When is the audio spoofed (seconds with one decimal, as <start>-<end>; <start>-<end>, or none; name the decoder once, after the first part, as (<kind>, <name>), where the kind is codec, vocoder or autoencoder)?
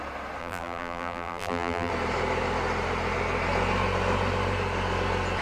0.4-1.9 (vocoder, BigVGAN v2)